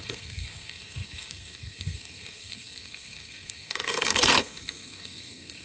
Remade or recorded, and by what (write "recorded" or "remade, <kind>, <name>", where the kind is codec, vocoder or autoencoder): remade, codec, SNAC